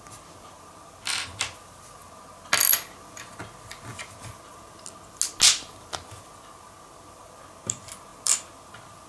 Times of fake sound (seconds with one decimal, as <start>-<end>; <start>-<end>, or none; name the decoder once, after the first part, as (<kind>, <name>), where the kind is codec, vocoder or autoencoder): none